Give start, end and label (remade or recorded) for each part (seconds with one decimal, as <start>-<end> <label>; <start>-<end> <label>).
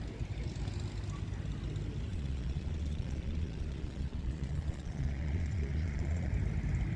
0.0-2.1 recorded; 2.1-6.3 remade; 6.3-7.0 recorded